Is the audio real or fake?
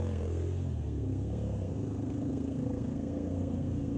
fake